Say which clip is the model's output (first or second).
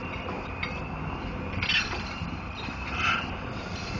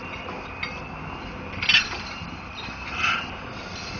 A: first